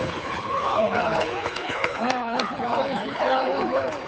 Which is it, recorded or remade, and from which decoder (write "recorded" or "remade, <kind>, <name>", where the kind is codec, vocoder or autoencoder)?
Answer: remade, codec, HILCodec